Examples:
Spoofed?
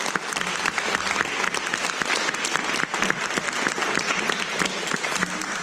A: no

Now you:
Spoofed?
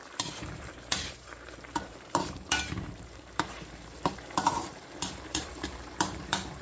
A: yes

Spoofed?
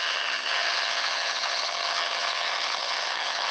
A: yes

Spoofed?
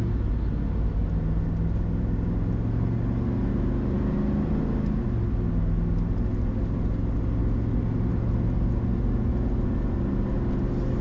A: no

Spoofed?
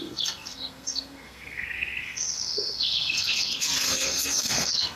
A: yes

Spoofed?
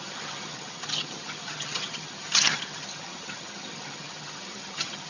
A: yes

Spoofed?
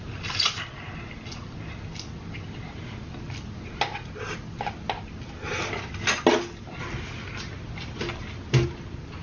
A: no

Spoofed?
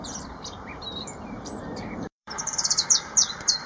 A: yes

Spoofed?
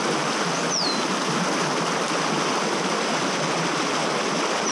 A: no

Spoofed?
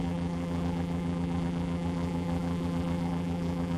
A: yes